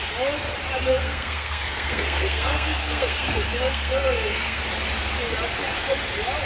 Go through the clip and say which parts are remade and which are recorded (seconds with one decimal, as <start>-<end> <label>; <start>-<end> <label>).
0.0-0.9 recorded; 0.9-4.6 remade; 4.6-6.5 recorded